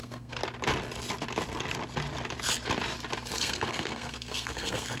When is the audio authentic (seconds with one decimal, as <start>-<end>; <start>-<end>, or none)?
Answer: 0.4-3.4